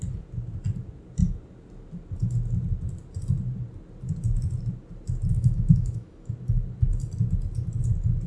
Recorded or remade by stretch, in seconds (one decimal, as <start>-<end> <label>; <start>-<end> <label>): 0.0-5.3 recorded; 5.3-6.3 remade; 6.3-8.3 recorded